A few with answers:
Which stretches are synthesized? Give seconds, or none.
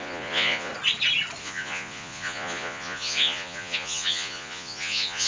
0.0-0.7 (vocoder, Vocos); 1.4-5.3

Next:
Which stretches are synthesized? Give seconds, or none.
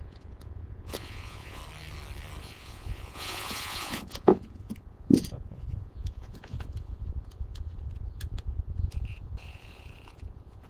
0.0-1.6 (vocoder, Vocos); 2.4-10.7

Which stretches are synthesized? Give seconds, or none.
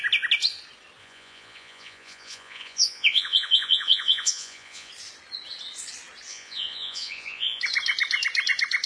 1.0-4.9 (vocoder, Vocos); 6.3-7.6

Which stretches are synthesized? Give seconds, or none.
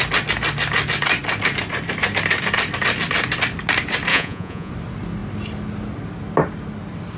4.1-4.7 (vocoder, Vocos)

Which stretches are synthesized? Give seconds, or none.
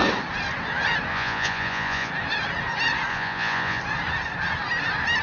1.1-2.1 (vocoder, Vocos); 3.1-3.8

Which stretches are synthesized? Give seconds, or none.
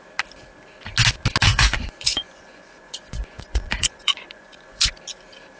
1.5-4.9 (vocoder, Vocos)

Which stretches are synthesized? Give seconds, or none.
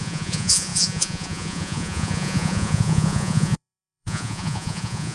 0.0-5.1 (vocoder, Vocos)